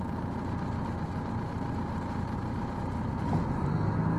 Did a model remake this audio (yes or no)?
no